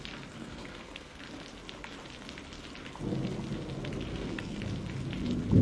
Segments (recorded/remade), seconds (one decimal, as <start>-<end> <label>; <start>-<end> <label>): 0.0-0.4 recorded; 0.4-1.2 remade; 1.2-4.1 recorded; 4.1-4.6 remade; 4.6-5.6 recorded

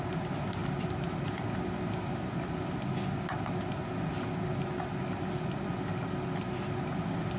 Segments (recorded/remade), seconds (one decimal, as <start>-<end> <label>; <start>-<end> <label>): 0.0-7.4 recorded

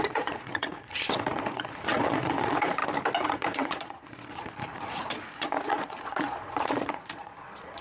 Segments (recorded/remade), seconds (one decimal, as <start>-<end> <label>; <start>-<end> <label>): 0.0-2.8 remade; 2.8-3.3 recorded; 3.3-7.8 remade

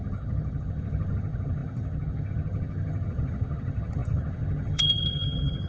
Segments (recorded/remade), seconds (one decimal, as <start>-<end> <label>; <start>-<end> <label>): 0.0-5.7 remade

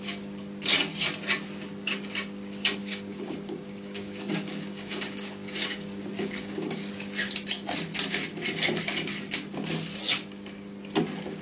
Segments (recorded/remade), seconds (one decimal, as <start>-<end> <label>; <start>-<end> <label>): 0.0-2.8 recorded; 2.8-6.9 remade; 6.9-11.4 recorded

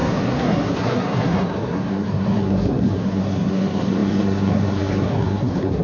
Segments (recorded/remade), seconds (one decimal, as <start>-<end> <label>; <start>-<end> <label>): 0.0-5.8 remade